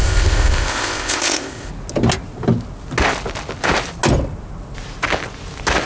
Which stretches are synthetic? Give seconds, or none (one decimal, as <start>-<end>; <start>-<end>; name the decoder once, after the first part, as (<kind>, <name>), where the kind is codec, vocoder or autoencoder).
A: 0.0-1.7 (codec, ZipCodec)